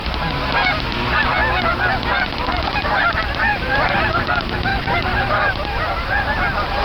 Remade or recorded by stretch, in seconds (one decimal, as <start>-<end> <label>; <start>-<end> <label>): 0.0-3.5 recorded; 3.5-4.3 remade; 4.3-4.7 recorded; 4.7-5.2 remade; 5.2-6.8 recorded